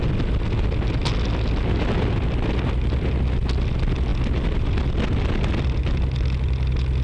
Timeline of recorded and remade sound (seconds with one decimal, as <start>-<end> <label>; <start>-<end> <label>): 0.0-7.0 recorded